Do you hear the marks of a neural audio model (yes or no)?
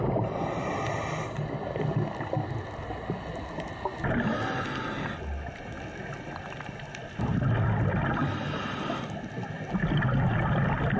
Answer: no